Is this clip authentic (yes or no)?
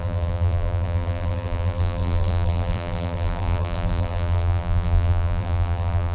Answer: no